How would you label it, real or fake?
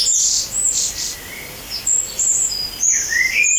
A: real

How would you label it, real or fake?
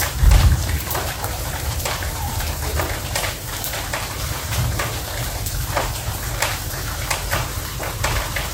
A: fake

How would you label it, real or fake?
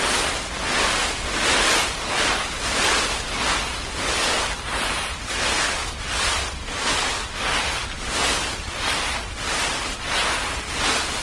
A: real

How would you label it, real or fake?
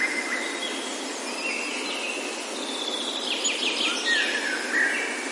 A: real